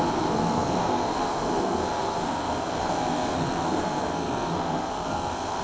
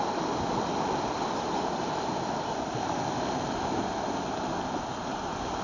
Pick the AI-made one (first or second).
first